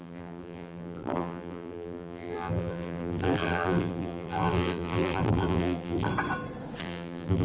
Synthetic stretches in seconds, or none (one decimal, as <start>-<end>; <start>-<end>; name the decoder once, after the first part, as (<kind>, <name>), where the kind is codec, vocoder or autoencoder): 0.0-6.1 (vocoder, BigVGAN v2); 6.8-7.4

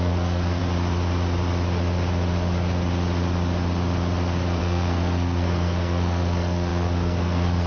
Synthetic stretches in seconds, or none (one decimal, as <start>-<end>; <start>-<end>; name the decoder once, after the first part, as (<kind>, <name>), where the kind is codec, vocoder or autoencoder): 0.0-0.6 (codec, SNAC); 4.6-7.7

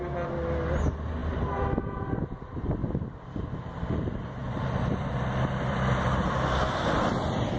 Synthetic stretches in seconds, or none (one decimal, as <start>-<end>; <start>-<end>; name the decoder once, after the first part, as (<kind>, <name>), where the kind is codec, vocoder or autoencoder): 1.2-1.8 (vocoder, BigVGAN v2); 4.4-7.6

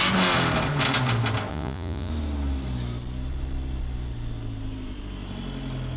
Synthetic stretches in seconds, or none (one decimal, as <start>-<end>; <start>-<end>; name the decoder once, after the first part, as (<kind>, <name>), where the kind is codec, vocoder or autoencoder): 1.5-2.1 (vocoder, Vocos)

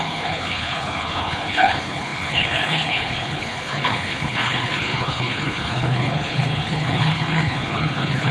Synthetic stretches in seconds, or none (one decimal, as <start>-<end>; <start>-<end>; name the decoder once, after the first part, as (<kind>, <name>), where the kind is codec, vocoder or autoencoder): 0.0-8.3 (codec, HILCodec)

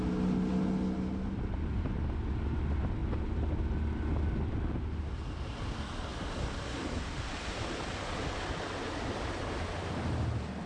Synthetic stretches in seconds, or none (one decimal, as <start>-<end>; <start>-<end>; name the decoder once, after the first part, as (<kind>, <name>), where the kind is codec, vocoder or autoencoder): none

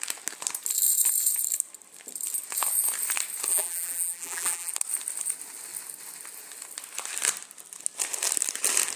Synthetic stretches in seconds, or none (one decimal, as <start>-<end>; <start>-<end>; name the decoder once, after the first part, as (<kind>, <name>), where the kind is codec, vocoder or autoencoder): 3.5-4.7 (vocoder, BigVGAN v2)

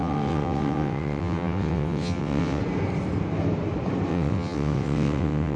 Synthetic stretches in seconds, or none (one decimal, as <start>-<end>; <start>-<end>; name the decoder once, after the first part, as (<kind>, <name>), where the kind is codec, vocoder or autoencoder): 0.0-2.6 (vocoder, WaveNeXt); 4.1-5.6